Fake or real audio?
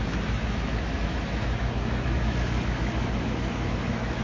fake